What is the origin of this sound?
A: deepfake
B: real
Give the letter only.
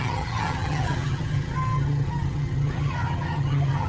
A